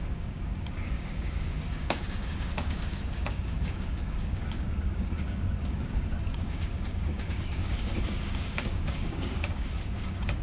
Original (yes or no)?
no